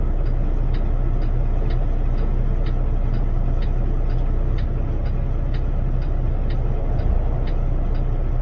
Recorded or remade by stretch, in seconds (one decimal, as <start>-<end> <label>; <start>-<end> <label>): 0.0-8.4 recorded